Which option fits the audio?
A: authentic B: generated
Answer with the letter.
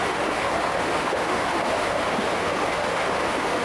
B